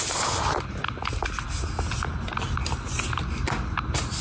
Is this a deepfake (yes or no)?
no